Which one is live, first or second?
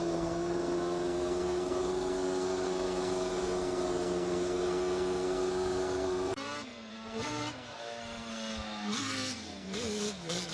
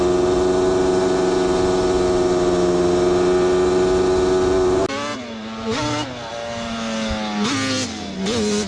second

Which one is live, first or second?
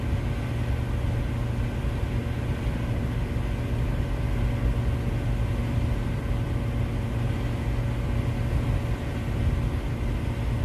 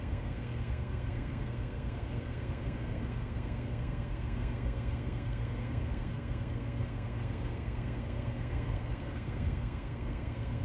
first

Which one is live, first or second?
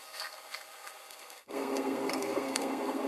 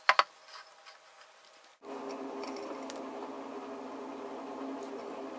second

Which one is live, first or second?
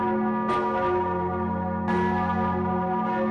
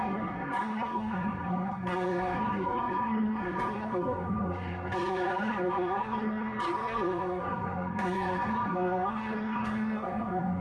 first